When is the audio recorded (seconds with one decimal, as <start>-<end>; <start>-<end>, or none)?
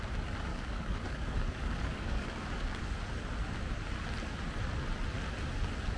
0.0-0.5; 2.8-6.0